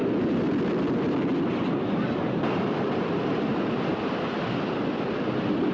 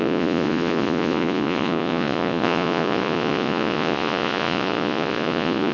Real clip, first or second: first